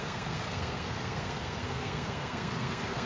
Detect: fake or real fake